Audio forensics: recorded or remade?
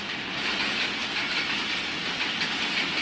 recorded